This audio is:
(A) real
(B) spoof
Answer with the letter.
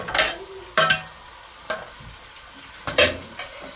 A